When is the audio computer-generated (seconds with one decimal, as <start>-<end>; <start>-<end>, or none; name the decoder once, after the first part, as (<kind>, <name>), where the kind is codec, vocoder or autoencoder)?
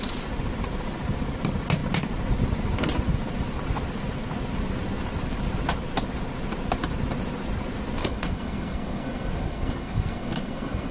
8.0-10.9 (codec, SNAC)